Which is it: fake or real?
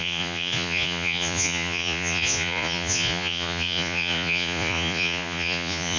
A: fake